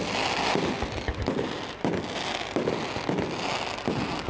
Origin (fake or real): real